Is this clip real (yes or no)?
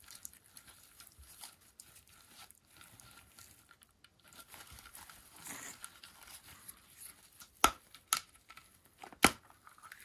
yes